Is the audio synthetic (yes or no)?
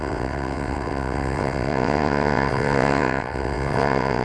yes